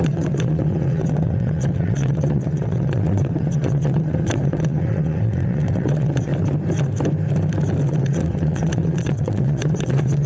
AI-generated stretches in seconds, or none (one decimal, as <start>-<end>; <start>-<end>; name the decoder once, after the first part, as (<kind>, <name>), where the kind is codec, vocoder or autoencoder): 0.0-6.3 (vocoder, WaveNeXt); 7.9-10.3